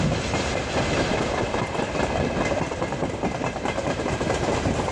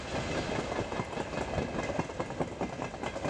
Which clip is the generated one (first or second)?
first